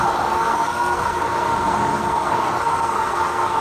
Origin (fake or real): fake